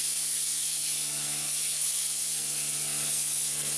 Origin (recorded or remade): remade